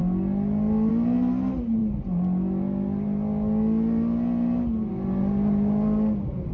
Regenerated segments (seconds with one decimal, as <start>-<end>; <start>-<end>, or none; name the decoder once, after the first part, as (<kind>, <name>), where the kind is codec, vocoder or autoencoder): none